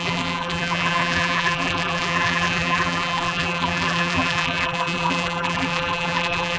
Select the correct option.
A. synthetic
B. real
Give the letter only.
A